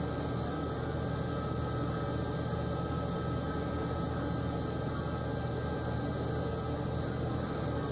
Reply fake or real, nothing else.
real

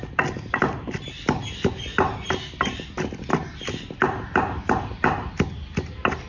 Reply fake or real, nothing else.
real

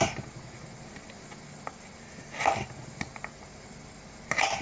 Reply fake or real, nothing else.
real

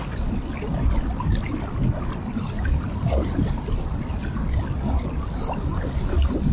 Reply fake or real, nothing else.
real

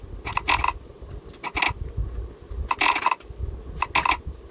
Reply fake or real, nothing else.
real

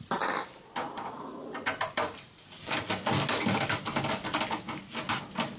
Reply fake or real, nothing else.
real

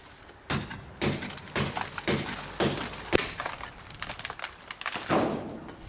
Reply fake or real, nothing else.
real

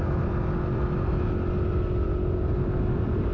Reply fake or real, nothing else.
real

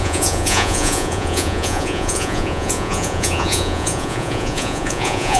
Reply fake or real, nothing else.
fake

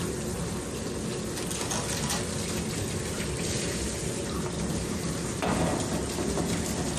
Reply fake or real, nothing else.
real